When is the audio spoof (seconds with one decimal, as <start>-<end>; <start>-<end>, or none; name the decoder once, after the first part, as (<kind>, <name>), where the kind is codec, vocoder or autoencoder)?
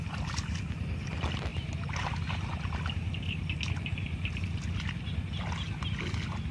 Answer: none